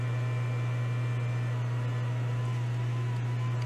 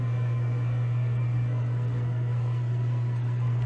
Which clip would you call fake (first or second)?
second